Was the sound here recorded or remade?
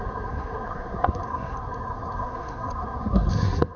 remade